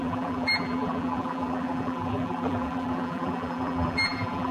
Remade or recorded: remade